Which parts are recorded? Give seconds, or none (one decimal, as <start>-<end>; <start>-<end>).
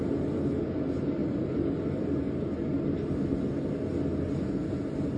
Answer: 0.0-5.2